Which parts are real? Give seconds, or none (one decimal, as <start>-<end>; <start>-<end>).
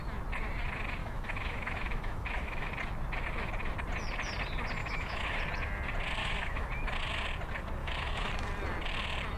0.0-1.0; 2.7-4.8; 5.4-6.2; 6.7-7.8; 8.3-9.4